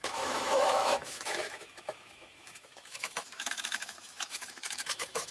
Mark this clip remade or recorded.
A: remade